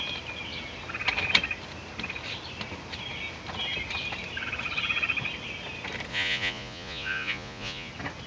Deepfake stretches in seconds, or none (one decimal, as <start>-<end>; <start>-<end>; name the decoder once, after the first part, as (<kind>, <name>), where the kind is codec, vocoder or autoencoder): 6.1-7.9 (vocoder, Vocos)

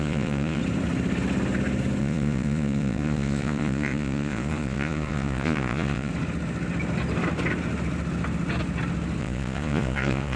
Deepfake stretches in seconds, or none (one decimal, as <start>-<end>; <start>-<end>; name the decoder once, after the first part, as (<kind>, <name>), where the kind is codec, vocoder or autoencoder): 0.0-0.6 (vocoder, Vocos); 2.0-6.1; 9.2-10.4

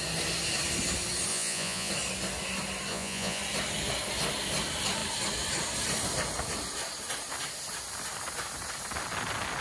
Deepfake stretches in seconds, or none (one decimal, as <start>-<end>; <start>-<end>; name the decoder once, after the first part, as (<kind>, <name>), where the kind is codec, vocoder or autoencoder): 1.3-1.9 (vocoder, Vocos); 2.9-3.4